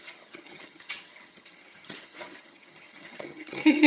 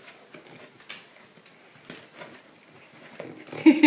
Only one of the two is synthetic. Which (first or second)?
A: first